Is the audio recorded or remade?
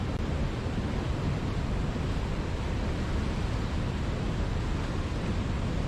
recorded